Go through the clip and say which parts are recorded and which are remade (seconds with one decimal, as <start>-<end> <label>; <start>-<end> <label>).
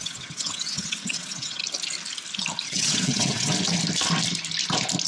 0.0-1.6 remade; 1.6-2.7 recorded; 2.7-3.5 remade; 3.5-5.1 recorded